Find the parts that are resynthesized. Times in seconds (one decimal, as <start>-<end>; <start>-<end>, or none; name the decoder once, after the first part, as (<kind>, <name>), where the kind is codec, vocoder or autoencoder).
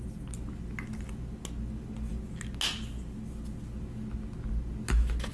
none